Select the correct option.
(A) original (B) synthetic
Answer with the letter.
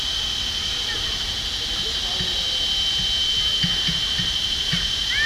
A